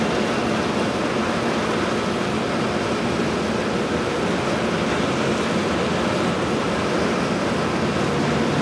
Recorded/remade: recorded